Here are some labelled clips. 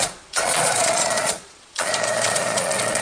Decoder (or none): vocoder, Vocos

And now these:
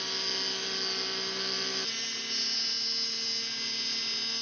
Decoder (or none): none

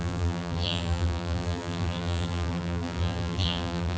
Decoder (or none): vocoder, BigVGAN v2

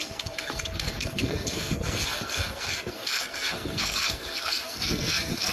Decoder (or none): codec, SNAC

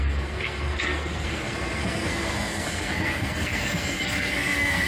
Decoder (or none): codec, SNAC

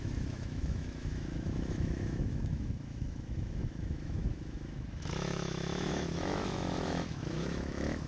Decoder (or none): autoencoder, DAC-VAE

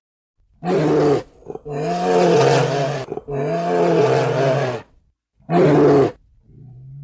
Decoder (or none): none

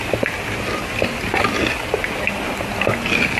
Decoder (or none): none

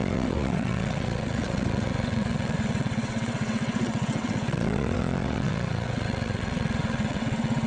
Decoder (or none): vocoder, WaveNeXt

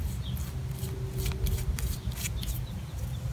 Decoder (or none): none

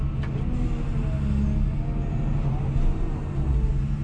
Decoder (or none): none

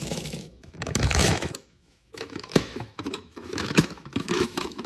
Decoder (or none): autoencoder, DAC-VAE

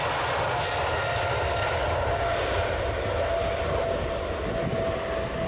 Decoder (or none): none